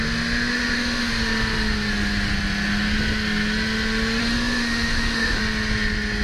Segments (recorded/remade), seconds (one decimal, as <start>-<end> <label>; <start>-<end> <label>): 0.0-0.5 recorded; 0.5-1.1 remade; 1.1-4.2 recorded; 4.2-5.4 remade; 5.4-6.2 recorded